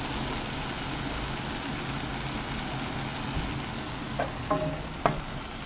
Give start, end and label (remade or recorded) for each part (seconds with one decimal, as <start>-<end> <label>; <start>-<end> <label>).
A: 0.0-5.7 recorded